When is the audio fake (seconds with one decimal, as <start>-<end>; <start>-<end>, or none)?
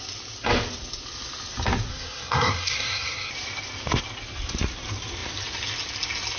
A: 1.9-3.3